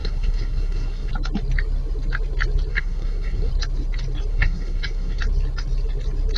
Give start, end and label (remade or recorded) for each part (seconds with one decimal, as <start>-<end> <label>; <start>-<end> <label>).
0.0-1.1 remade; 1.1-2.7 recorded; 2.7-3.5 remade; 3.5-4.3 recorded; 4.3-5.2 remade; 5.2-6.4 recorded